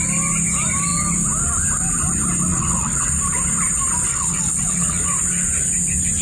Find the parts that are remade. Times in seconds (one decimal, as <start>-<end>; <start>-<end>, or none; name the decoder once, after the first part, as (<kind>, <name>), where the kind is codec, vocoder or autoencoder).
2.5-3.1 (vocoder, WaveNeXt); 4.1-5.0